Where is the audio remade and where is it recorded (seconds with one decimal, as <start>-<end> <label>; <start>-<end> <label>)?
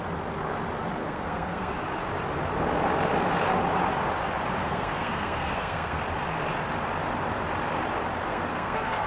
0.0-1.0 recorded; 1.0-1.7 remade; 1.7-4.6 recorded; 4.6-6.0 remade; 6.0-8.3 recorded; 8.3-9.1 remade